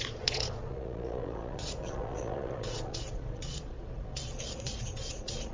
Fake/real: fake